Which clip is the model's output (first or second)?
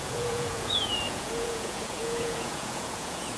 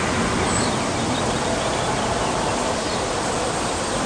first